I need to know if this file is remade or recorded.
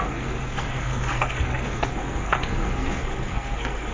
remade